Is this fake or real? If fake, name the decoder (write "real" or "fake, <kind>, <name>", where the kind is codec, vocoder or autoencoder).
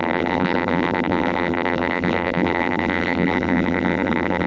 fake, vocoder, BigVGAN v2